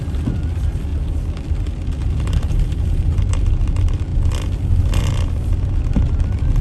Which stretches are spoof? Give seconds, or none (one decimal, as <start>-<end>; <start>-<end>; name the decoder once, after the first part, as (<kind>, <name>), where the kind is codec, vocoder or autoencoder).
2.0-3.2 (vocoder, BigVGAN v2)